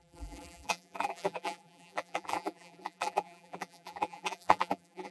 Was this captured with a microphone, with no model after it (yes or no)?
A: no